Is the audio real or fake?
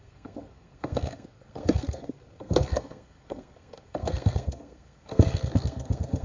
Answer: fake